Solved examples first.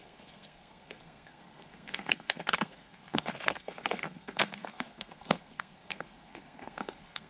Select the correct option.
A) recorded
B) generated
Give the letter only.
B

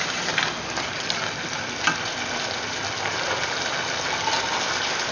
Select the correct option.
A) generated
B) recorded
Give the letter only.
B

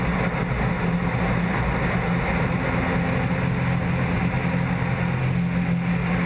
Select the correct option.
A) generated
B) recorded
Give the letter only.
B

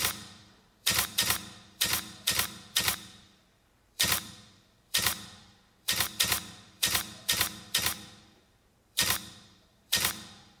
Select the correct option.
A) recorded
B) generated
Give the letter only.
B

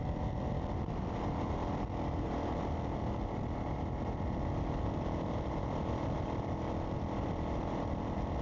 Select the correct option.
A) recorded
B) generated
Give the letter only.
A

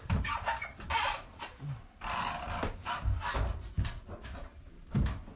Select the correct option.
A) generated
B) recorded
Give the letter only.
A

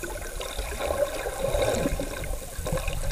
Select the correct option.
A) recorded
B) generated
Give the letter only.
A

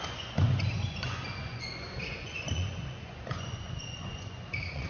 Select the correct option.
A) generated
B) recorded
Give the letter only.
A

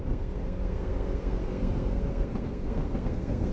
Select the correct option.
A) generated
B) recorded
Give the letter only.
A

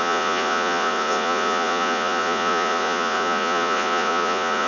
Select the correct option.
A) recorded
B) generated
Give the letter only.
B